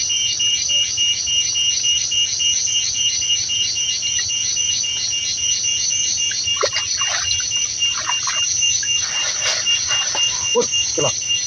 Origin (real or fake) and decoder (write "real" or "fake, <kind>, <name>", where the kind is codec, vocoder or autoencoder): real